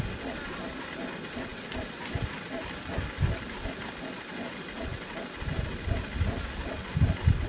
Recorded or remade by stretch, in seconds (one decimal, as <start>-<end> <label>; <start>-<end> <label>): 0.0-7.5 recorded